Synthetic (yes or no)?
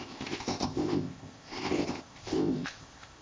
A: yes